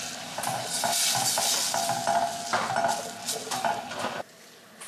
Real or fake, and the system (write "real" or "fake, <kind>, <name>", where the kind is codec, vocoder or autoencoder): real